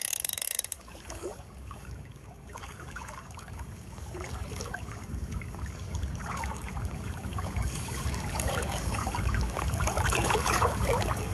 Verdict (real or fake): fake